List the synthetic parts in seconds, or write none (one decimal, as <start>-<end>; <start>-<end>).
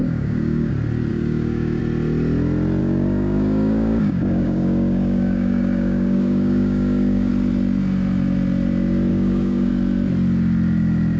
0.0-0.7; 1.1-1.8; 2.8-7.3; 9.1-9.7